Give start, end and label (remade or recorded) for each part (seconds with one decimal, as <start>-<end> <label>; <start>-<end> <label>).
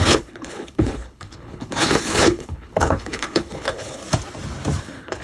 0.0-4.0 remade; 4.0-4.8 recorded; 4.8-5.2 remade